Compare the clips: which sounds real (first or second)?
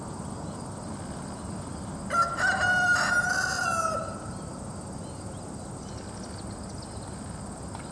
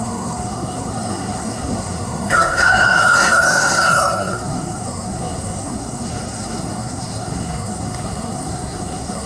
first